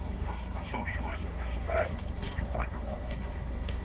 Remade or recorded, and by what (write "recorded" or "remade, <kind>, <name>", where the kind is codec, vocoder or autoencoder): remade, codec, SNAC